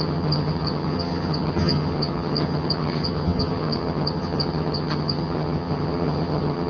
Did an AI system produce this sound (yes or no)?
yes